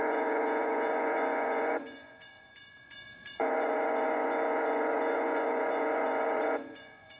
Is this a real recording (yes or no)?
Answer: no